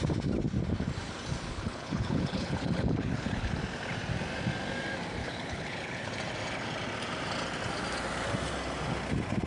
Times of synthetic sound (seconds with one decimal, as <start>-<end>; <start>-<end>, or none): 1.5-3.5; 5.2-6.1